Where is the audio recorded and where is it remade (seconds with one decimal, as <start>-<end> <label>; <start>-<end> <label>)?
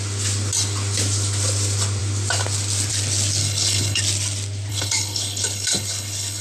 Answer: 0.0-3.4 recorded; 3.4-4.0 remade; 4.0-4.7 recorded; 4.7-6.4 remade